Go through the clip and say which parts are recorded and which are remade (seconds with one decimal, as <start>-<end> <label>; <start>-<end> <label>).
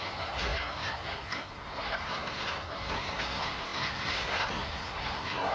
0.0-5.5 remade